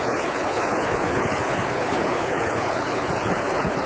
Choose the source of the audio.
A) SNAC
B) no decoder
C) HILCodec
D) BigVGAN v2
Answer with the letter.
C